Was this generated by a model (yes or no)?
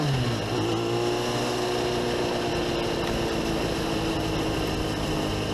no